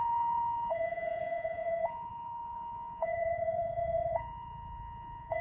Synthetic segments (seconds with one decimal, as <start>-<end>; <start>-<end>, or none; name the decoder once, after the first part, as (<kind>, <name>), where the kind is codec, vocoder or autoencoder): 0.0-5.4 (vocoder, Vocos)